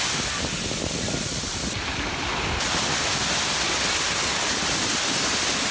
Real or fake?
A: real